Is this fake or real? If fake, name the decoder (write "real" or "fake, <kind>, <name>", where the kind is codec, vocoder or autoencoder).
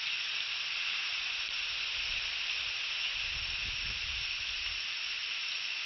real